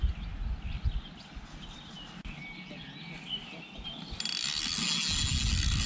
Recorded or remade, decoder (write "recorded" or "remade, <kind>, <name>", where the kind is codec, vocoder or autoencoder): recorded